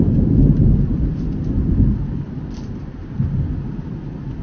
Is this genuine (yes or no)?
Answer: no